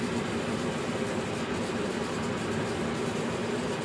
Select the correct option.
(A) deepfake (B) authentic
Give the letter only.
B